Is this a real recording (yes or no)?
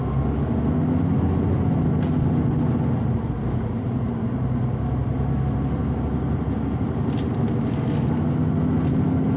yes